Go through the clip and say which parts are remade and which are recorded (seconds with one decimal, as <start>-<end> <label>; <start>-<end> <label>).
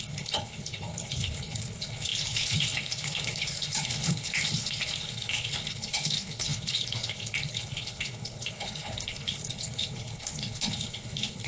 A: 0.0-11.5 remade